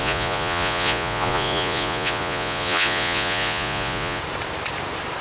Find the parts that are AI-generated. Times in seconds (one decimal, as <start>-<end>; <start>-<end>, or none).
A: 0.0-4.2